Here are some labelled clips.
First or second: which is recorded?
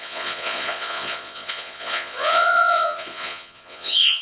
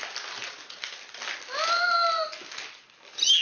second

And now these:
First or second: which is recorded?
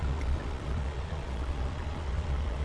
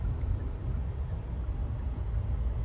second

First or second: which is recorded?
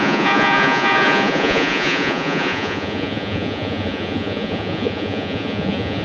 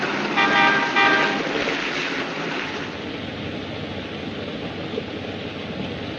second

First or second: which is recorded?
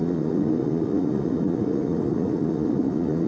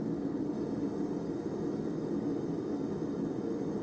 second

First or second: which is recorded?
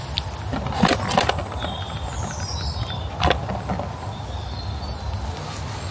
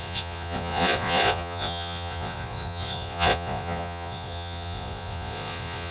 first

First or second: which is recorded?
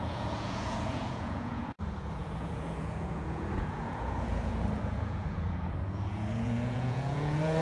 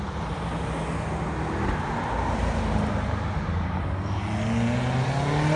second